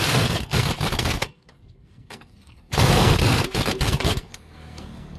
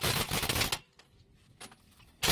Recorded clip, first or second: second